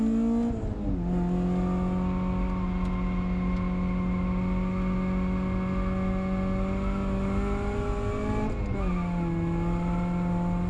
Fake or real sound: real